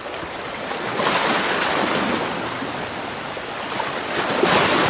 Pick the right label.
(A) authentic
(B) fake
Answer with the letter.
A